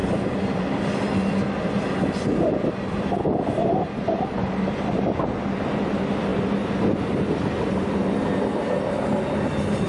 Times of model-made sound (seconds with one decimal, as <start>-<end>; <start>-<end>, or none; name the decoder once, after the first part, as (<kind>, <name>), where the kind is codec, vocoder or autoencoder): none